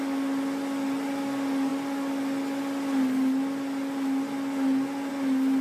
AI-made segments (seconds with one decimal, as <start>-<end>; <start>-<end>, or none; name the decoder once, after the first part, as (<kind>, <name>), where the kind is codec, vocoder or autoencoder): none